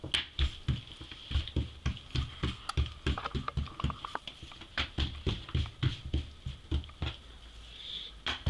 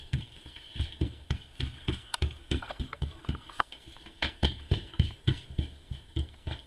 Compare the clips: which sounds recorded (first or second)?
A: first